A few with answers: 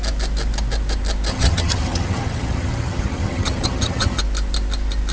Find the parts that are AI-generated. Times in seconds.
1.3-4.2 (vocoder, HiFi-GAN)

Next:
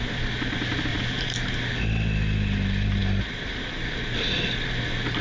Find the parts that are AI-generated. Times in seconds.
0.9-1.5 (vocoder, BigVGAN v2)